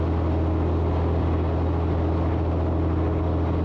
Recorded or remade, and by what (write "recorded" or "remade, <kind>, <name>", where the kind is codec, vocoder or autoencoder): recorded